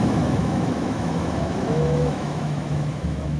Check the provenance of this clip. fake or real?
fake